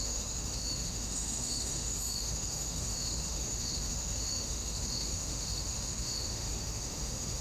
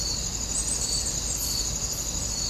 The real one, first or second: second